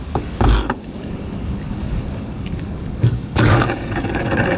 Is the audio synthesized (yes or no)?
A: yes